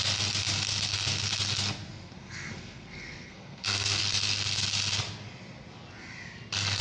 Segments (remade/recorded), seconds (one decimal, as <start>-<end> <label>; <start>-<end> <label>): 0.0-1.9 recorded; 1.9-4.0 remade; 4.0-6.8 recorded

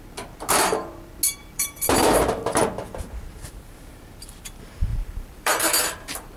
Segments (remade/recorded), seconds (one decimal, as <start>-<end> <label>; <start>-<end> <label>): 0.0-1.4 recorded; 1.4-2.6 remade; 2.6-4.9 recorded; 4.9-6.4 remade